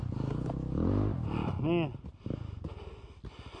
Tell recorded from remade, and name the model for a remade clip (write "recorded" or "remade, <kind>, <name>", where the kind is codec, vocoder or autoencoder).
recorded